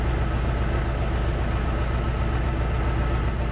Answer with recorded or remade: recorded